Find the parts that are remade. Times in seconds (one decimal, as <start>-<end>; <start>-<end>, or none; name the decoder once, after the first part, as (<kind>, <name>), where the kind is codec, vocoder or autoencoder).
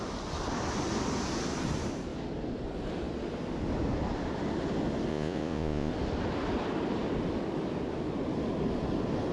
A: 5.1-5.9 (vocoder, Vocos)